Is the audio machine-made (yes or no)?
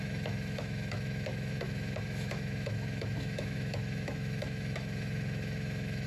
yes